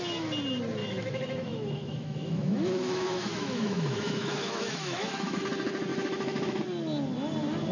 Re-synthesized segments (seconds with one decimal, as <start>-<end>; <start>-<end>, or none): 0.8-5.4; 5.9-6.6